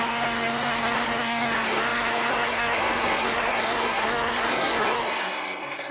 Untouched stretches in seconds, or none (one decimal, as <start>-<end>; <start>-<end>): none